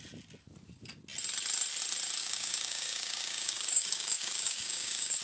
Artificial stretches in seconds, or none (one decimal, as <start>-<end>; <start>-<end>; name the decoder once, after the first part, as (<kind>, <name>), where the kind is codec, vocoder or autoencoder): 2.2-5.2 (codec, DAC)